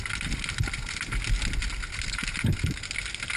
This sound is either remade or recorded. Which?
recorded